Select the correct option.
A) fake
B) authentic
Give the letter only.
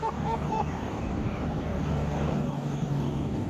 A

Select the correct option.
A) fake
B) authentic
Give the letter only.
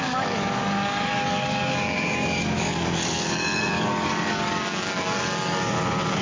A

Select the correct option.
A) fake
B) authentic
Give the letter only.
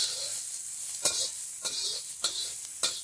B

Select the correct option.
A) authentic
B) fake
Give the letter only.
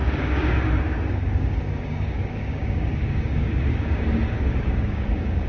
B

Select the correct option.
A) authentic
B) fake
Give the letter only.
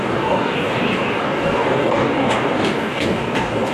B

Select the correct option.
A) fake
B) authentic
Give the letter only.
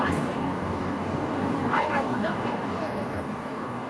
A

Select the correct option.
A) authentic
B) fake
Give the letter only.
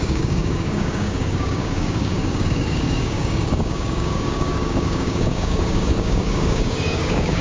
B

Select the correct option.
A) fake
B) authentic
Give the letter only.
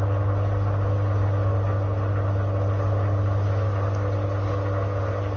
B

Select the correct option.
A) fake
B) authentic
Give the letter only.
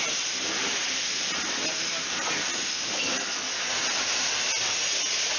B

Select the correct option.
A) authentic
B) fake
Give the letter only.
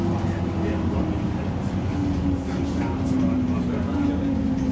A